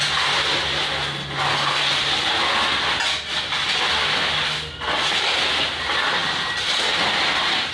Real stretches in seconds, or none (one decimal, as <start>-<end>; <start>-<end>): 0.0-7.7